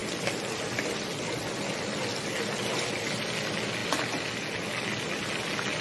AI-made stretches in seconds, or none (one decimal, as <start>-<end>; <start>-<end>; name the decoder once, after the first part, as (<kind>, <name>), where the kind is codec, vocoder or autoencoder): none